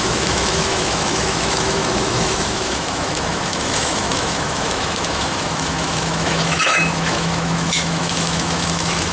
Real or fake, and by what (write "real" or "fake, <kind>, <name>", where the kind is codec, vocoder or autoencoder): fake, autoencoder, DAC-VAE